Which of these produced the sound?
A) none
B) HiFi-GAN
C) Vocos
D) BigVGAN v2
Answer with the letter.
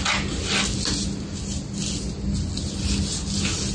A